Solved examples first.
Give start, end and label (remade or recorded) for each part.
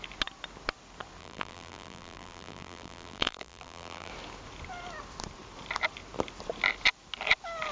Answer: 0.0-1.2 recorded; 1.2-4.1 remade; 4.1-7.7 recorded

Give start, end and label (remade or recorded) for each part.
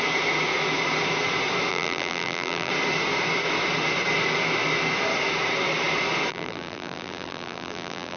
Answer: 0.0-1.7 recorded; 1.7-2.7 remade; 2.7-6.3 recorded; 6.3-8.2 remade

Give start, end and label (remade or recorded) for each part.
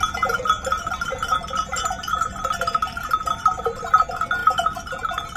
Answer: 0.0-5.4 recorded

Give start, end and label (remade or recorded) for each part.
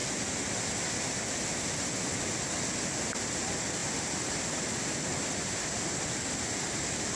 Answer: 0.0-3.8 recorded; 3.8-4.6 remade; 4.6-7.2 recorded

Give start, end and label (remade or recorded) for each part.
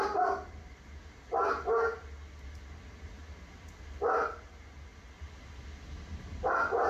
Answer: 0.0-6.9 recorded